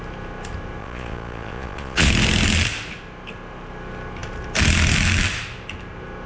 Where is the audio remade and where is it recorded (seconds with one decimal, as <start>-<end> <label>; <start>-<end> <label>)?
0.0-0.8 recorded; 0.8-2.1 remade; 2.1-6.3 recorded

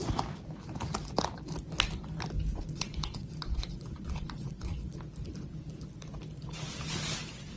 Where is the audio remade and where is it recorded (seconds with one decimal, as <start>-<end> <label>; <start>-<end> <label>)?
0.0-2.5 recorded; 2.5-5.0 remade; 5.0-7.6 recorded